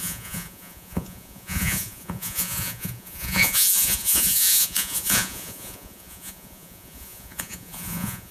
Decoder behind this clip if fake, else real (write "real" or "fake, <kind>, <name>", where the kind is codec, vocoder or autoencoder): fake, vocoder, Vocos